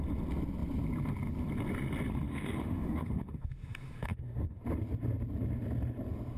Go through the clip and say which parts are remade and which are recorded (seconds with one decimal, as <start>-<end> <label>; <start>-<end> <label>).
0.0-2.3 recorded; 2.3-4.6 remade; 4.6-6.4 recorded